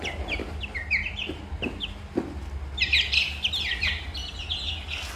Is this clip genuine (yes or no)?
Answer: yes